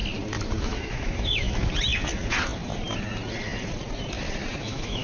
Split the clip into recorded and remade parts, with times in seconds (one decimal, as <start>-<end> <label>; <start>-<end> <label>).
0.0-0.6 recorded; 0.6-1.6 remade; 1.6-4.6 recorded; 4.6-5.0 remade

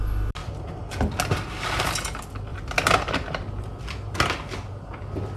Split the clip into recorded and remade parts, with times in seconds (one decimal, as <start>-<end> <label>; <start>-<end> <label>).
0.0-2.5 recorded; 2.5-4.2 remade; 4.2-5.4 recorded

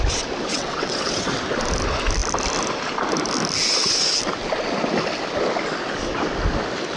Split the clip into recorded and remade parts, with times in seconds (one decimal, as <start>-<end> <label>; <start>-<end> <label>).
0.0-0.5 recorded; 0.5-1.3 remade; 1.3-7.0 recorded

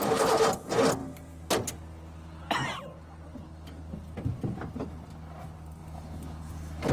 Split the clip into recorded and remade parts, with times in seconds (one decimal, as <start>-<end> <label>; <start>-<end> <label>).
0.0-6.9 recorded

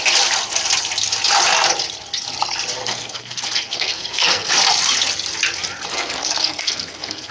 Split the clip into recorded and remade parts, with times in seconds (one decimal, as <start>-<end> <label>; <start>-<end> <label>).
0.0-2.8 recorded; 2.8-4.5 remade; 4.5-5.9 recorded; 5.9-7.3 remade

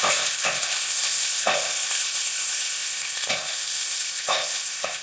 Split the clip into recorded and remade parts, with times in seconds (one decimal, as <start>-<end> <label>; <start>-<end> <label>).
0.0-5.0 remade

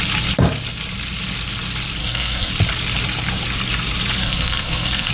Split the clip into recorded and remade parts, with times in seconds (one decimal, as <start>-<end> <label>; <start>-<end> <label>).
0.0-2.0 recorded; 2.0-2.5 remade; 2.5-4.2 recorded; 4.2-5.1 remade

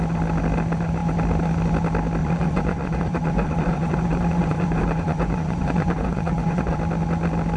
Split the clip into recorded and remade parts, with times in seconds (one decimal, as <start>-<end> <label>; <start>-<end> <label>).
0.0-2.2 recorded; 2.2-6.8 remade; 6.8-7.6 recorded